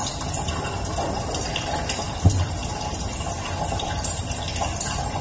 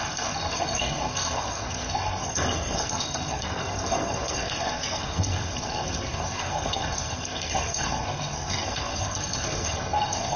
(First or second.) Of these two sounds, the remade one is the second